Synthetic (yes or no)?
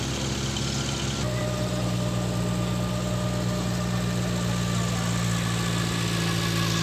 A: no